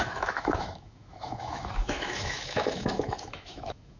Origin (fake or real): fake